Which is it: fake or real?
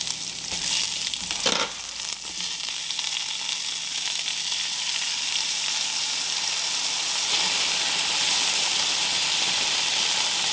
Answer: real